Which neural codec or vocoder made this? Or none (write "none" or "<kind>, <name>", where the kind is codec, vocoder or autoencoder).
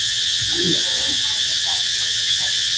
vocoder, WaveNeXt